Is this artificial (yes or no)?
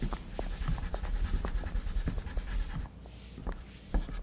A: no